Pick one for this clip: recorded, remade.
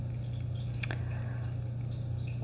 recorded